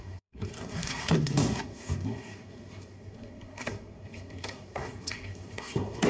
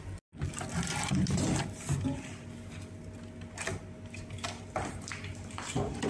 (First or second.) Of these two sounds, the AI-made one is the first